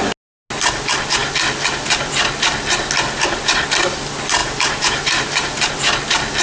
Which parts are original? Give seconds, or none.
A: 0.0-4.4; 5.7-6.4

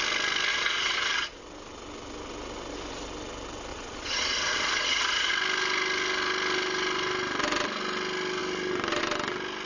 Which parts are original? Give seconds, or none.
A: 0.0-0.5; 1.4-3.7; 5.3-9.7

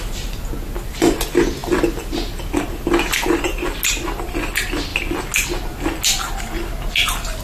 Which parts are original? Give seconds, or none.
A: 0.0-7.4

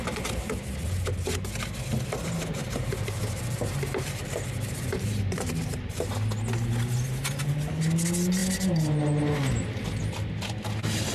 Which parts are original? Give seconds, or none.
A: 0.0-2.6; 6.1-11.1

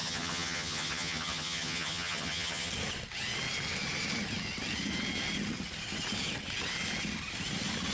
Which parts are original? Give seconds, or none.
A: 2.7-7.9

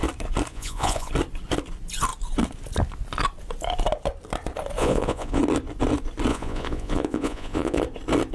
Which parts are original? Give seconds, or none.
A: 0.0-0.5; 1.1-4.8; 5.4-6.3; 7.8-8.3

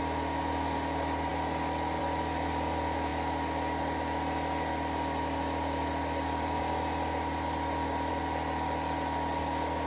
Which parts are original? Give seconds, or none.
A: 0.0-9.9